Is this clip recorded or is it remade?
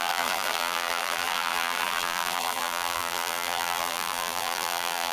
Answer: remade